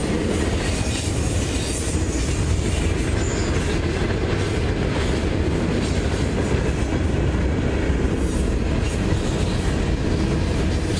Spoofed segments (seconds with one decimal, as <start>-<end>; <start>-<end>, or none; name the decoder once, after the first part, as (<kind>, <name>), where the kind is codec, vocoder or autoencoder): none